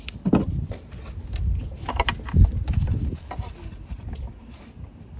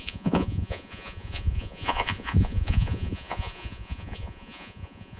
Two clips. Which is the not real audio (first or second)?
second